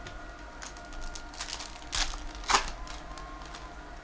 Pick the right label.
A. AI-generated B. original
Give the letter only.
B